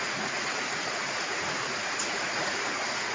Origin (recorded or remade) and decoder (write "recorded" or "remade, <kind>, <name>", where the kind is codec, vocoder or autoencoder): remade, vocoder, Vocos